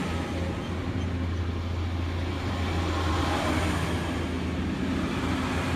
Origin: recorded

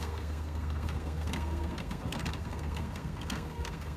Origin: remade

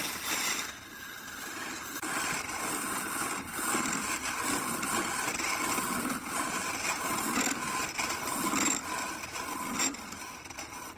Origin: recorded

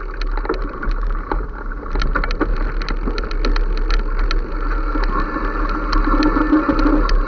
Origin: recorded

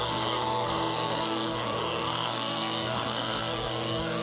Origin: remade